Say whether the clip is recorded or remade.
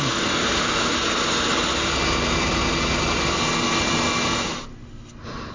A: recorded